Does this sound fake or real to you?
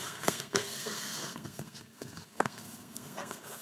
fake